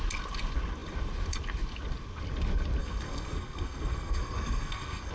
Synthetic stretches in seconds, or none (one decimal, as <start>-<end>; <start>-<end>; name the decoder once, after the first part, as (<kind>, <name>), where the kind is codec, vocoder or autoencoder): 2.8-5.1 (codec, SNAC)